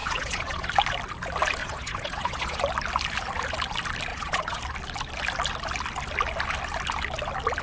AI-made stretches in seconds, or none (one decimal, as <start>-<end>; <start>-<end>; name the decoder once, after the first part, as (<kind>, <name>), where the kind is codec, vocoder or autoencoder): 0.0-0.7 (vocoder, Vocos); 1.6-2.6; 4.1-4.6